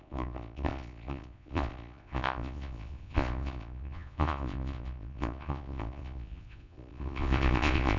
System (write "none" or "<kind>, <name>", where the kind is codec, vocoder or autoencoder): vocoder, Vocos